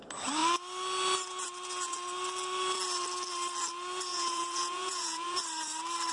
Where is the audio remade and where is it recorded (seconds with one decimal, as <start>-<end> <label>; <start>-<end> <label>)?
0.0-4.1 recorded; 4.1-5.4 remade; 5.4-6.1 recorded